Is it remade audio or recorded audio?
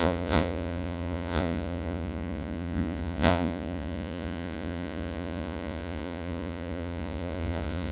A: remade